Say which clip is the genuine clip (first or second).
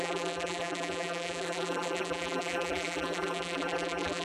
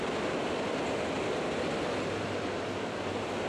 second